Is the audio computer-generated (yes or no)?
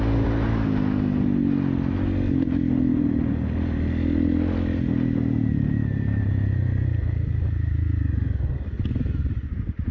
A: no